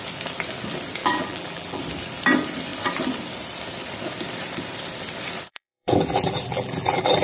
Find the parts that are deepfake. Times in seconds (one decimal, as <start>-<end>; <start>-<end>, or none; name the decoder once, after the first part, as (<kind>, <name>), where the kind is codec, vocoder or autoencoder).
1.0-1.8 (vocoder, BigVGAN v2); 5.5-7.2